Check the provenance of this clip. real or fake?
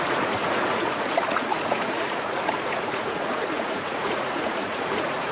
fake